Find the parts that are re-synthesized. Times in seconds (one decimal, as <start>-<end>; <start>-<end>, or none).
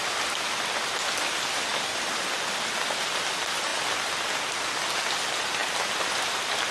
none